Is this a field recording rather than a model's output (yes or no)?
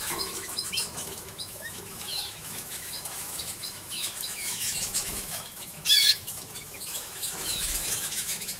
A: no